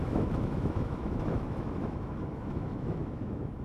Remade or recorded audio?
remade